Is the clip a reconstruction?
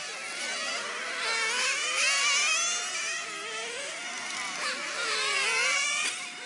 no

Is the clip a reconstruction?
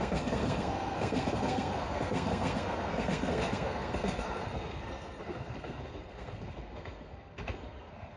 yes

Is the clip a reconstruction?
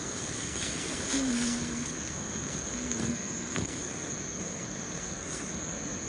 yes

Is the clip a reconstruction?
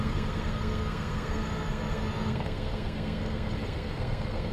yes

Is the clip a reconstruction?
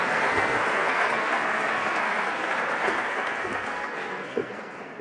yes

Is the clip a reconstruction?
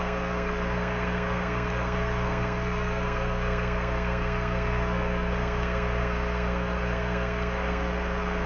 yes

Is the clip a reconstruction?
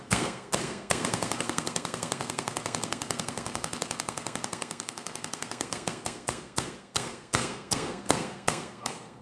yes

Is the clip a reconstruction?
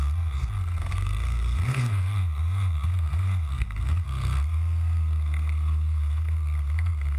yes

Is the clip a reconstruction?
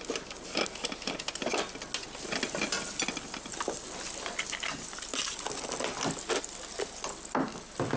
no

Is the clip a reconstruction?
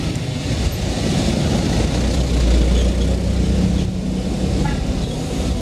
no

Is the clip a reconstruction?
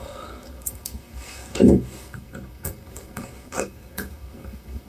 yes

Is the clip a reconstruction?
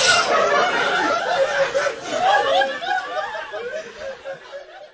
no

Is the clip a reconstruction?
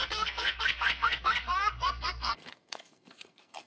yes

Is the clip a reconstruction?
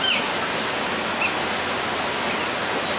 no